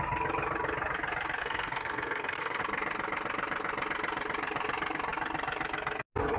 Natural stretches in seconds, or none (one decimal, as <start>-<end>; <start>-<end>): 0.0-1.4; 2.6-6.4